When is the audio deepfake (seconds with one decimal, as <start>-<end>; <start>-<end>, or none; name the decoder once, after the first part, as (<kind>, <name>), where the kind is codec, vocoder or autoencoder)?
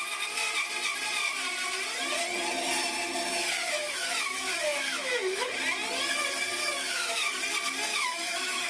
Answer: 3.3-5.5 (autoencoder, DAC-VAE); 6.6-7.4; 7.9-8.7